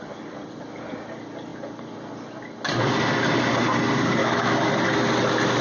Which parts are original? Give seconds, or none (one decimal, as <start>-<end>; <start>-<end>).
0.0-4.2; 4.7-5.6